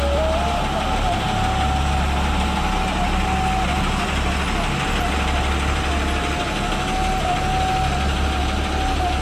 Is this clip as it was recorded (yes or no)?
yes